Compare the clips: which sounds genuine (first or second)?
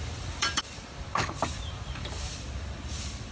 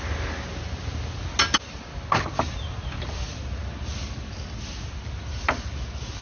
second